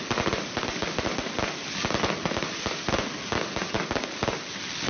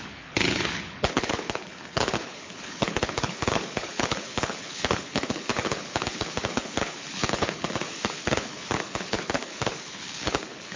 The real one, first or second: first